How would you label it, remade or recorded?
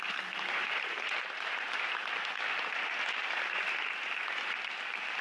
recorded